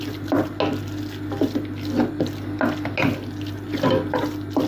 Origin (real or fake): real